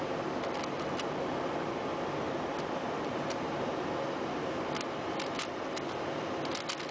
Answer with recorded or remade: recorded